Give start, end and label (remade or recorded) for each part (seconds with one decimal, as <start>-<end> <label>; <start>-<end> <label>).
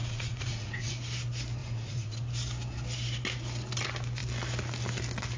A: 0.0-0.9 remade; 0.9-1.6 recorded; 1.6-2.3 remade; 2.3-5.4 recorded